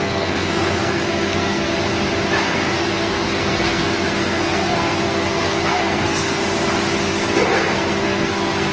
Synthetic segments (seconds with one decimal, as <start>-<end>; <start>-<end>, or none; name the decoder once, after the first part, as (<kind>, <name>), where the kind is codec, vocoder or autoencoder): 0.0-1.7 (codec, SNAC); 2.4-6.4; 7.0-8.7